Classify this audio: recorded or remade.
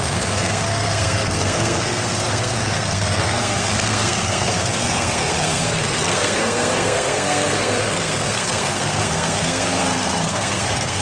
remade